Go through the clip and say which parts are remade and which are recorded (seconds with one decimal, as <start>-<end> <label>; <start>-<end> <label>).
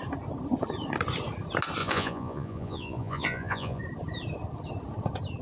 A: 0.0-1.8 recorded; 1.8-3.8 remade; 3.8-5.4 recorded